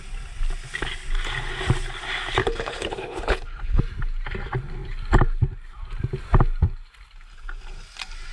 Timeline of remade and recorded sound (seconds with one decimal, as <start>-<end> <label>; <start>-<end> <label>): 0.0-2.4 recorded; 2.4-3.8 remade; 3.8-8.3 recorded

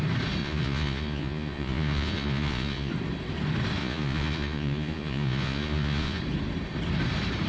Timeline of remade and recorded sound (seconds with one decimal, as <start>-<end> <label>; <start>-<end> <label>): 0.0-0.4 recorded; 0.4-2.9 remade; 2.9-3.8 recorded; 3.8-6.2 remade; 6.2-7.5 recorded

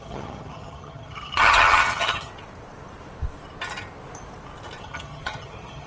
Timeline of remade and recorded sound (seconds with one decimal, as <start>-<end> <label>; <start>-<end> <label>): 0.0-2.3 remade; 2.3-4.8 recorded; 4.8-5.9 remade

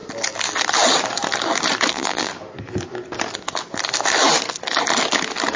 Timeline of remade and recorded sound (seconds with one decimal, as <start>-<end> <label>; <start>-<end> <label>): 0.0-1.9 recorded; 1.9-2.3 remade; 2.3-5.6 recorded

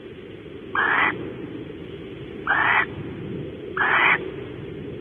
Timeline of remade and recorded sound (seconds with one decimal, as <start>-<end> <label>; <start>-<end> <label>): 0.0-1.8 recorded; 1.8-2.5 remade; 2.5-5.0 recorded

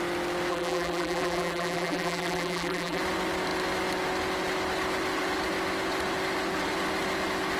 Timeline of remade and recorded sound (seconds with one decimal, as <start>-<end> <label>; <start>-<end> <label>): 0.0-0.5 recorded; 0.5-3.0 remade; 3.0-7.6 recorded

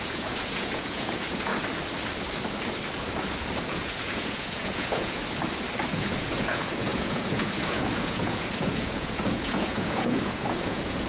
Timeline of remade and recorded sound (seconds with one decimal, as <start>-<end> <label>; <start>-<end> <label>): 0.0-1.5 remade; 1.5-3.6 recorded; 3.6-5.2 remade; 5.2-5.9 recorded; 5.9-11.1 remade